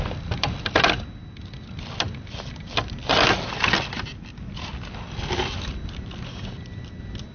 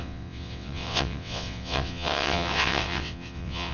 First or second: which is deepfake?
second